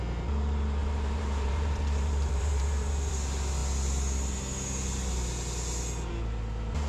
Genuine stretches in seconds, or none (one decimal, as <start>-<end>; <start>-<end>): 0.0-0.8; 3.1-6.9